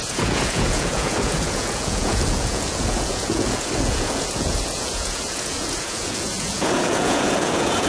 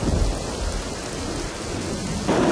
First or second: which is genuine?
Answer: second